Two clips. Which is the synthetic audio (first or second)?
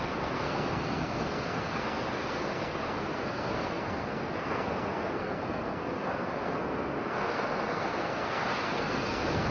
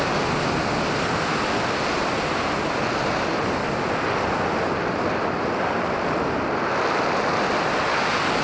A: first